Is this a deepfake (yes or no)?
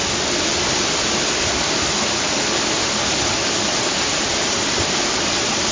no